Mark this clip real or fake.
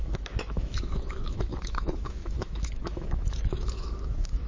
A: fake